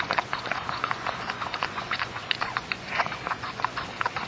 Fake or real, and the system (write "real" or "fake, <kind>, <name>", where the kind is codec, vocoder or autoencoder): fake, vocoder, Vocos